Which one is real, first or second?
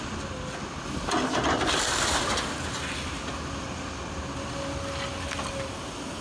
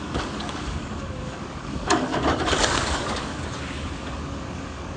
first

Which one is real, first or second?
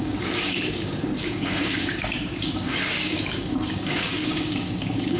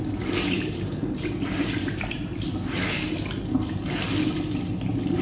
second